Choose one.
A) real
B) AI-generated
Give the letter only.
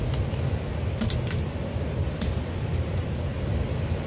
A